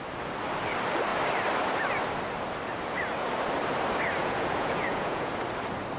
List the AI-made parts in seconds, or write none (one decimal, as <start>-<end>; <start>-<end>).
4.2-5.3